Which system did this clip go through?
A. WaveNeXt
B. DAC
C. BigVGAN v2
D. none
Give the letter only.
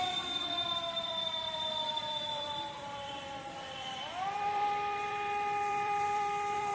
C